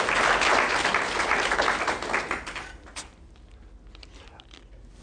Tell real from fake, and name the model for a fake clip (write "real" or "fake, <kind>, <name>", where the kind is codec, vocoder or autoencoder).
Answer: real